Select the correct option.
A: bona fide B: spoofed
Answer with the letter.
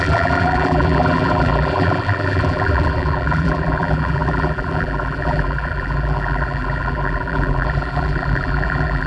B